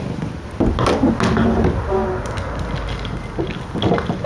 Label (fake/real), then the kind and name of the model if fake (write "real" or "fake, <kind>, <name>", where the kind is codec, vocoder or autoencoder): real